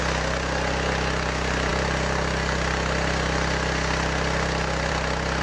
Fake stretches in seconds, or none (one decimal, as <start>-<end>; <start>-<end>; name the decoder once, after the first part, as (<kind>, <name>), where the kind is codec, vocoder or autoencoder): none